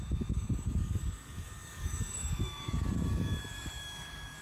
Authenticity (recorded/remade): remade